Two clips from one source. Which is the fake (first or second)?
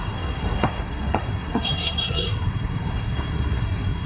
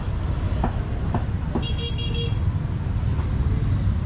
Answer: first